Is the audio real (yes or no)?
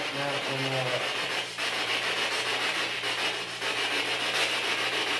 yes